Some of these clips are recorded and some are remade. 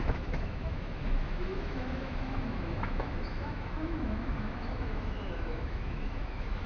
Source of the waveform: remade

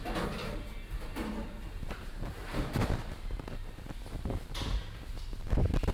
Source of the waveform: remade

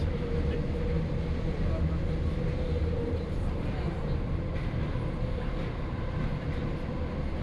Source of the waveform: recorded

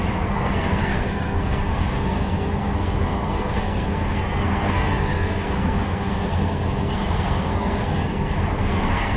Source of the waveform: remade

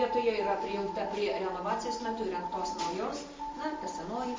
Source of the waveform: recorded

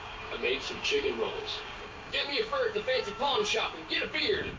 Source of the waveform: remade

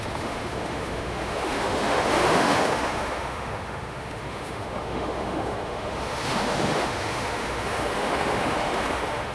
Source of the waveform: remade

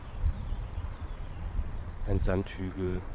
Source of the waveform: remade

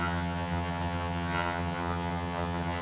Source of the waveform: remade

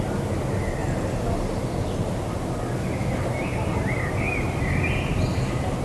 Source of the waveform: recorded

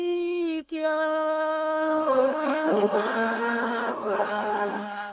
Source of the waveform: remade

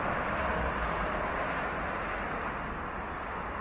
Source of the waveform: recorded